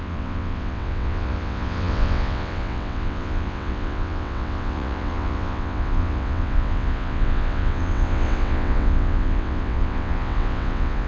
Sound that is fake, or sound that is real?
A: fake